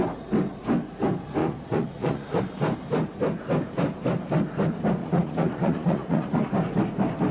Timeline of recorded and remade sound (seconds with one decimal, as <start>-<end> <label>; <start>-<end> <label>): 0.0-1.4 recorded; 1.4-2.4 remade; 2.4-5.0 recorded; 5.0-6.5 remade; 6.5-7.3 recorded